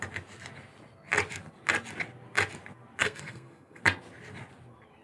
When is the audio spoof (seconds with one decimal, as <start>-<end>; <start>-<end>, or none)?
3.0-3.8